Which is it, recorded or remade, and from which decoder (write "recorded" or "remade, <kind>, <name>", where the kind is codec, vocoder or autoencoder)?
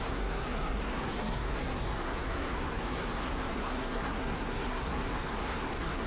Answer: remade, codec, SNAC